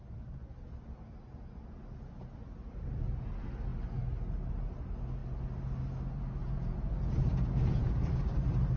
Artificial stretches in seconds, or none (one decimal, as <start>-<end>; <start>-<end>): 6.4-8.1